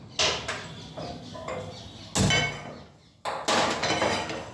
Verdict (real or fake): real